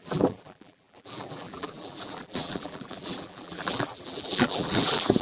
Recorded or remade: remade